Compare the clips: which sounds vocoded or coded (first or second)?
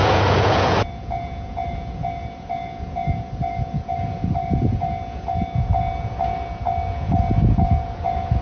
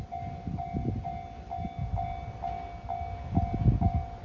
first